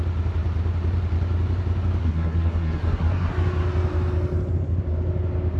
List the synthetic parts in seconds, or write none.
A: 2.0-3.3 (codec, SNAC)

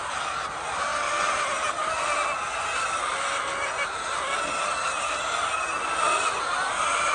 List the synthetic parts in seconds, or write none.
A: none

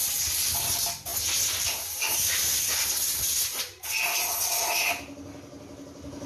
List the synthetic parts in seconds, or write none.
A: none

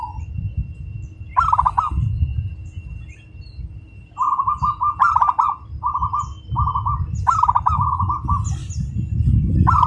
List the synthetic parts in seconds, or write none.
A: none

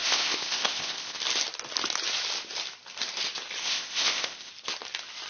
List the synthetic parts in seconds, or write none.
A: 0.0-1.2 (codec, ZipCodec); 3.6-4.5

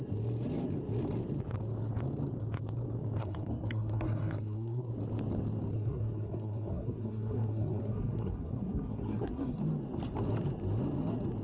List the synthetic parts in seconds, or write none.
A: 3.2-4.9 (codec, SNAC); 5.7-9.6

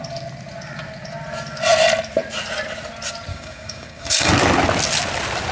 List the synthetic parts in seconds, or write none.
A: 3.3-4.3 (codec, DAC)